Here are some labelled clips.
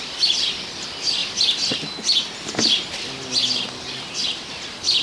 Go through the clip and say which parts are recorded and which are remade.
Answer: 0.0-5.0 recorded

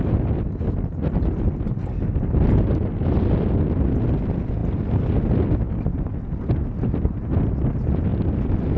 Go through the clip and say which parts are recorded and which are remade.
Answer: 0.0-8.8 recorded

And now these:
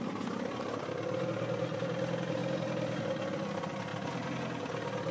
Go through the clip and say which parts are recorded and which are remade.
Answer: 0.0-5.1 recorded

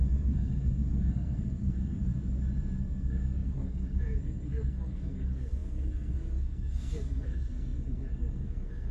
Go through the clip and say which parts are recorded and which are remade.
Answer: 0.0-2.1 remade; 2.1-2.8 recorded; 2.8-8.9 remade

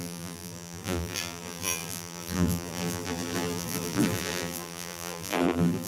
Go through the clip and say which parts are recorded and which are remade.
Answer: 0.0-5.9 remade